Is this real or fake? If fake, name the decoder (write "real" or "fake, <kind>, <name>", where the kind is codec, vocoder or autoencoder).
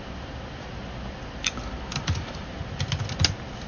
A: real